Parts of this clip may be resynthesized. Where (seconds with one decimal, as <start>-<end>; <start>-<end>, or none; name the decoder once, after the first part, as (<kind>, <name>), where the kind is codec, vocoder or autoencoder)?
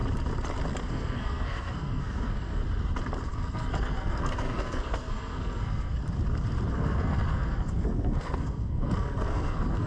0.8-2.6 (codec, SNAC); 3.3-6.0; 6.7-9.9